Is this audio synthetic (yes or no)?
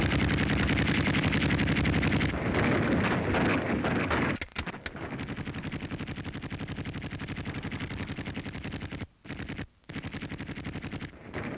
no